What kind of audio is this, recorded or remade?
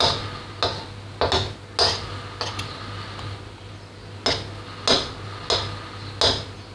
recorded